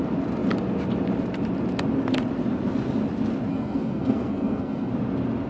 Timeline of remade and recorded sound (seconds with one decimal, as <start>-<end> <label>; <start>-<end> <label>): 0.0-3.5 recorded; 3.5-4.9 remade; 4.9-5.5 recorded